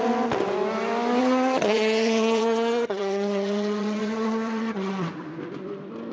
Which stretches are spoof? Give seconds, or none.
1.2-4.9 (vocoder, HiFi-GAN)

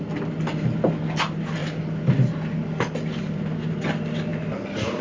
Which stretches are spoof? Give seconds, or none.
none

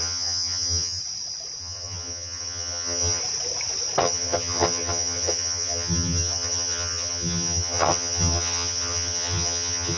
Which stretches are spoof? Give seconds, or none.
0.0-1.0 (vocoder, HiFi-GAN); 1.6-3.2; 4.0-10.0

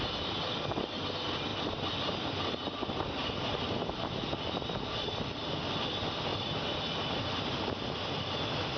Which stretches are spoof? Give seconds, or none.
none

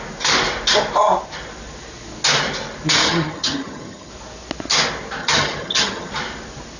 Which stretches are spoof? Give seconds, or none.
3.0-4.1 (vocoder, HiFi-GAN); 5.2-6.1